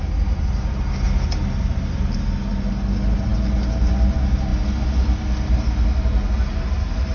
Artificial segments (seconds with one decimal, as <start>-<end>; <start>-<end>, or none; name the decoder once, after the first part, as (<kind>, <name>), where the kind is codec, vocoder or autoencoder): none